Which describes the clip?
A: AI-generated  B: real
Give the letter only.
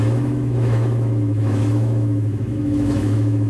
A